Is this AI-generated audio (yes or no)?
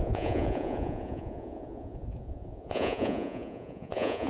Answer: yes